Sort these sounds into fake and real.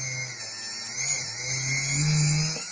real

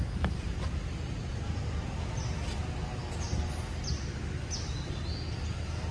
real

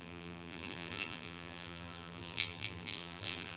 fake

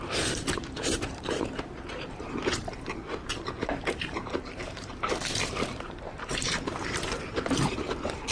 fake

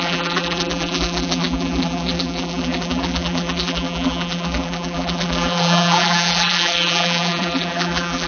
fake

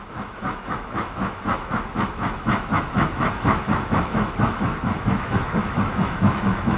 fake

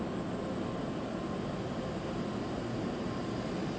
real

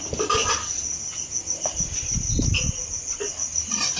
real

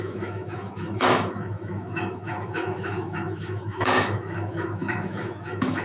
fake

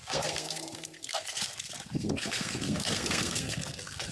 fake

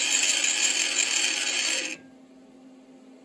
real